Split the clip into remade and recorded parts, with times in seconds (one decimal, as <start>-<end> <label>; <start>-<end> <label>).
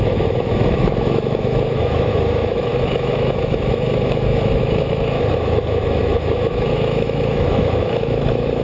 0.0-8.6 remade